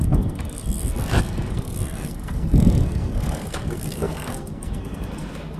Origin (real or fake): fake